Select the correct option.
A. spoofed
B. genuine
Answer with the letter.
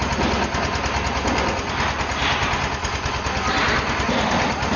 B